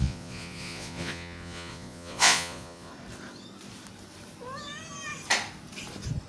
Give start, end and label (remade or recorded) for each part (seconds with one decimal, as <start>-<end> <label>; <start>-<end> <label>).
0.0-2.9 remade; 2.9-6.3 recorded